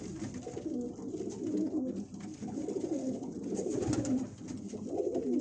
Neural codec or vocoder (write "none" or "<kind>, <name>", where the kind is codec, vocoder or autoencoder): none